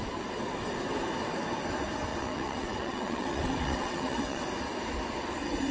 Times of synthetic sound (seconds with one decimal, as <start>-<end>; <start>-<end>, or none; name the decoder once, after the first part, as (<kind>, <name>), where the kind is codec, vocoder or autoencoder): 2.1-4.4 (vocoder, WaveNeXt)